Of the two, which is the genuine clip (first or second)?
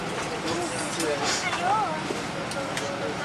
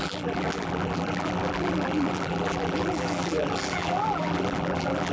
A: first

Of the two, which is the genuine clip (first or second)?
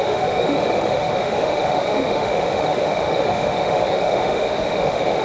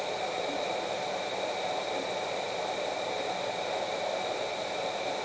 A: second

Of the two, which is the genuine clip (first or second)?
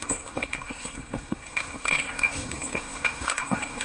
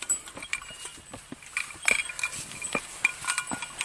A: second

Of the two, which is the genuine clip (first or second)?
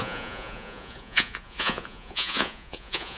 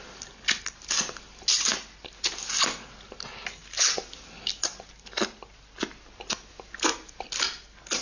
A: second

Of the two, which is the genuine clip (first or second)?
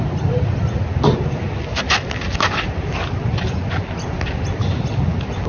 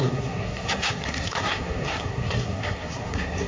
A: first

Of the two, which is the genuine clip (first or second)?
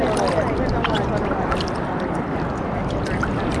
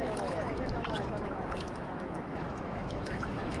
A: first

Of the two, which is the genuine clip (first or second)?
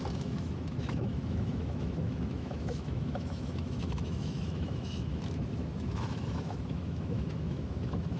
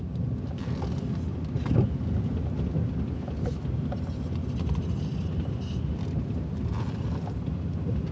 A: second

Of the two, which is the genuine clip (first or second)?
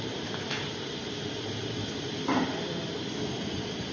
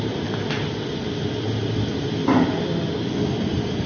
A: second